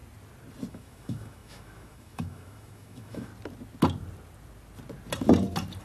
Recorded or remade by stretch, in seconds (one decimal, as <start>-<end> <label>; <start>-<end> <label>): 0.0-0.7 recorded; 0.7-3.3 remade; 3.3-5.8 recorded